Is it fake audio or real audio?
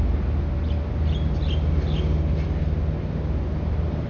real